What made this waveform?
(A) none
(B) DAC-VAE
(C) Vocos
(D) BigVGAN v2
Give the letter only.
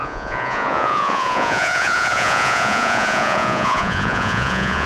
C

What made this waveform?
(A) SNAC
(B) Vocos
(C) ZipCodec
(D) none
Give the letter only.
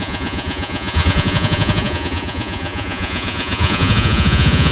B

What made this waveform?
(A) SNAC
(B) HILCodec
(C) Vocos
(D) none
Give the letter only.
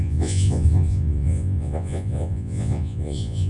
C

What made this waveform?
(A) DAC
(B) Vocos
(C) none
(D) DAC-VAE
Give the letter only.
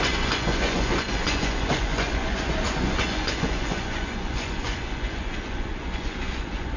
B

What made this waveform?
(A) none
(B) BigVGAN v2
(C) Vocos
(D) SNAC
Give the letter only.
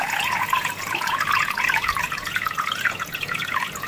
C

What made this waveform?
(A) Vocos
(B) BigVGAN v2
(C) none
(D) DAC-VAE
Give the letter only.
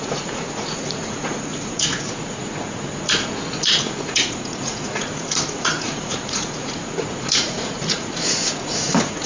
A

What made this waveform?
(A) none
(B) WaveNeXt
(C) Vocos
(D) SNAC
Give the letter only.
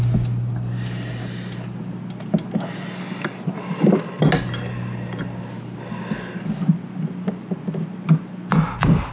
A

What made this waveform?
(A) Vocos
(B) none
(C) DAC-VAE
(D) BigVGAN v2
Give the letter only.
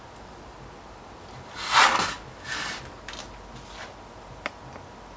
B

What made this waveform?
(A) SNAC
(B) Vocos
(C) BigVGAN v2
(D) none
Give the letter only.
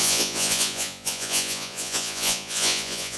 B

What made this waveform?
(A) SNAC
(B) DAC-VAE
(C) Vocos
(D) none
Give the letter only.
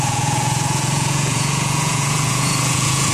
C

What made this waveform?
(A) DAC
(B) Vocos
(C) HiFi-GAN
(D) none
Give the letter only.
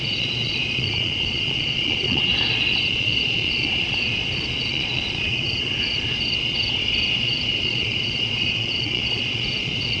B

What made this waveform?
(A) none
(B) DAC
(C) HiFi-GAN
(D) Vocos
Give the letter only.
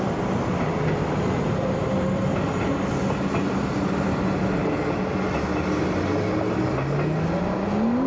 A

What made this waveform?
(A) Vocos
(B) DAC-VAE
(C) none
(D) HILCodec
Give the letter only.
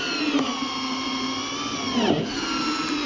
C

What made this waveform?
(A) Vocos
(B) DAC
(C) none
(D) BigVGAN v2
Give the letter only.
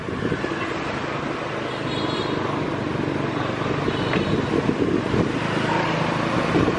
C